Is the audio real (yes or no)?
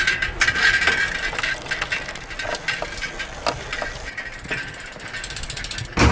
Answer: yes